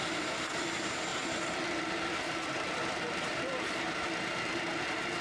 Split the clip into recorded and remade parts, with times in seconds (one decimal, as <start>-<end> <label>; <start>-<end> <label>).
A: 0.0-5.2 remade